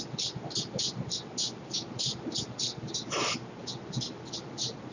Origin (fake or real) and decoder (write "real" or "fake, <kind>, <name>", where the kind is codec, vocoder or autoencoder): real